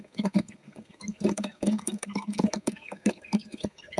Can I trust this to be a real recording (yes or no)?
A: no